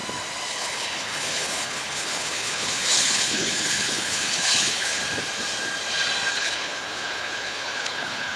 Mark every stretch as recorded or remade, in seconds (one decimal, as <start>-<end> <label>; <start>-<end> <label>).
0.0-0.5 recorded; 0.5-5.0 remade; 5.0-6.3 recorded; 6.3-8.4 remade